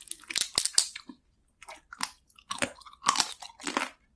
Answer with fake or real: real